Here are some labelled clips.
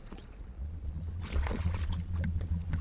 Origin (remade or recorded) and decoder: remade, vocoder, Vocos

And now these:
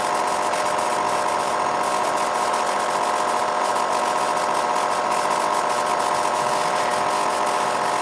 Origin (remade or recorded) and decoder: recorded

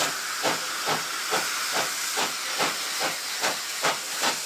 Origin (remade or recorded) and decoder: recorded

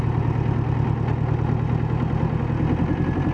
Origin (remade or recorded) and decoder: recorded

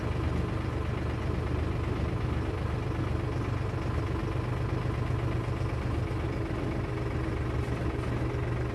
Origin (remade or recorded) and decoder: recorded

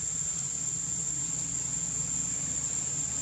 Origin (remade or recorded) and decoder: recorded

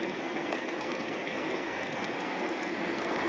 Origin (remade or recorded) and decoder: remade, codec, SNAC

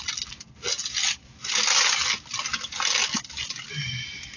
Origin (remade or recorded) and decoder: recorded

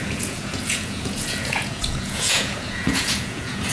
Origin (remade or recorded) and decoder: remade, vocoder, Vocos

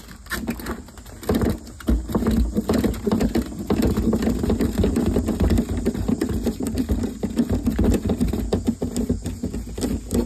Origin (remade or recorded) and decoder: recorded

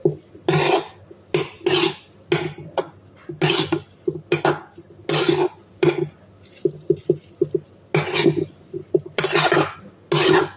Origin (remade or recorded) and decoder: recorded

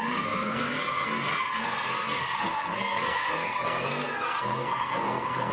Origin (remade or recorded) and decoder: remade, codec, SNAC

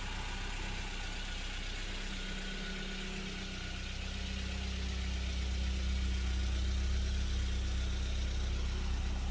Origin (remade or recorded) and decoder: recorded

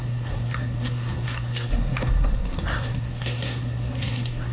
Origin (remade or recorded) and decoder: remade, codec, SNAC